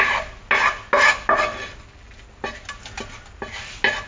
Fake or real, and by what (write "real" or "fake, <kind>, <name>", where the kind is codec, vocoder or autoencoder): real